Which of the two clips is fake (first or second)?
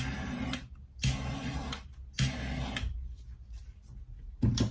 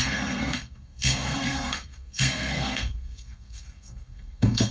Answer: second